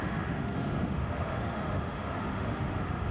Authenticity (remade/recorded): remade